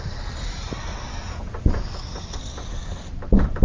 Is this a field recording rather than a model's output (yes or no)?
yes